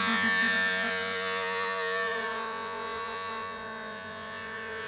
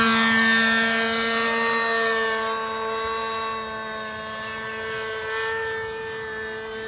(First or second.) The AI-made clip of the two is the first